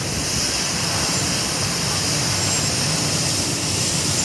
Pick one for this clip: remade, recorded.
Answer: recorded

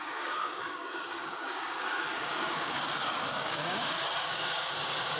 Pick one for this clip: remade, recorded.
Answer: remade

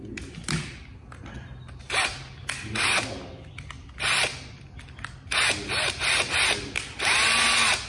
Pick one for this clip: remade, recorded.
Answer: recorded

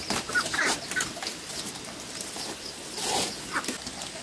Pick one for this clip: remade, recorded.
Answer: recorded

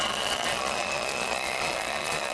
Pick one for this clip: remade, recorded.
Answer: remade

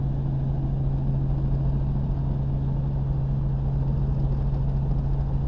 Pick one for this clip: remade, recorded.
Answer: recorded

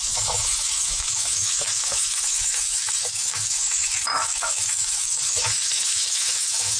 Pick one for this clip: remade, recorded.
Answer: remade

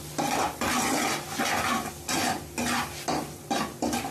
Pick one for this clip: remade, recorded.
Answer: recorded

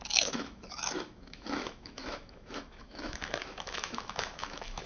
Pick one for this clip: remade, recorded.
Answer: remade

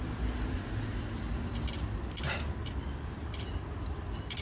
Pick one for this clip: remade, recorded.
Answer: remade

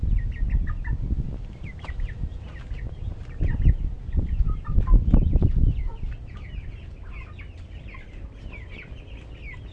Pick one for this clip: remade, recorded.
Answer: recorded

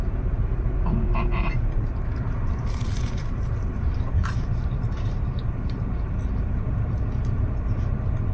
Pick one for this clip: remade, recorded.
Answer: remade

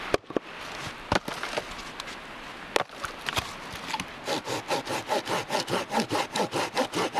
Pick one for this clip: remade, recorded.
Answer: recorded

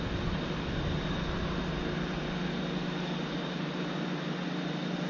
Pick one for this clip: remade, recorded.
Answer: recorded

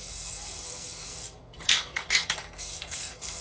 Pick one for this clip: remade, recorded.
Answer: remade